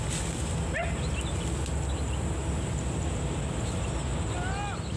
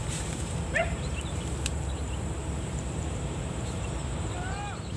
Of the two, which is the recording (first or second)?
first